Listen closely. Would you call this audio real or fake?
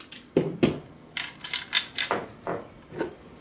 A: real